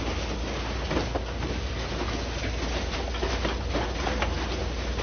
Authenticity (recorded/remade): recorded